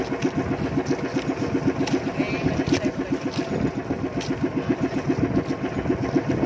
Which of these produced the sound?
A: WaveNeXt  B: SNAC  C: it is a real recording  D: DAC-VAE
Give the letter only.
C